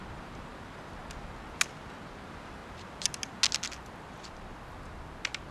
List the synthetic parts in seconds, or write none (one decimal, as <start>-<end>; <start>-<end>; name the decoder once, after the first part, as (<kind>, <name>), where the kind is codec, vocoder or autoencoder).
none